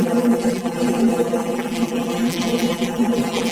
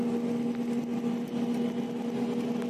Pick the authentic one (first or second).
second